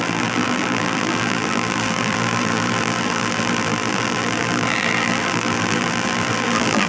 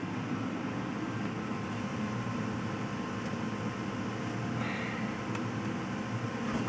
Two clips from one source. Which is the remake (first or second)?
first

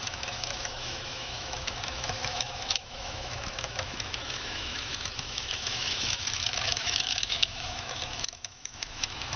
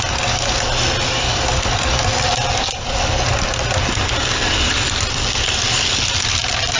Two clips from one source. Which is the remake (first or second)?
first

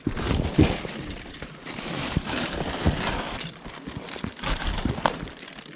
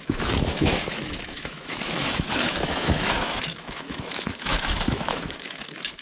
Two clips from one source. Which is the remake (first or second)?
second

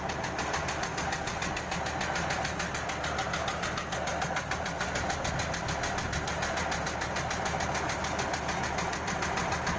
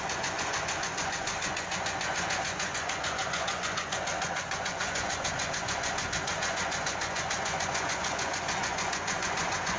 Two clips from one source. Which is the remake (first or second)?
second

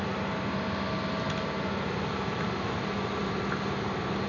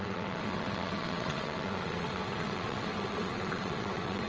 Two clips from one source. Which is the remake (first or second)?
second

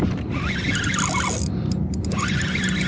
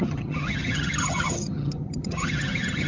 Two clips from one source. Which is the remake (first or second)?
second